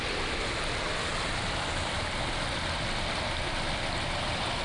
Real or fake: real